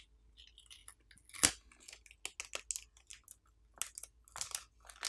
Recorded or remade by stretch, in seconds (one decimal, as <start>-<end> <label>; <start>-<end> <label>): 0.0-5.1 recorded